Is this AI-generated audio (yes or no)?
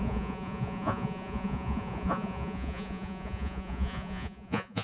yes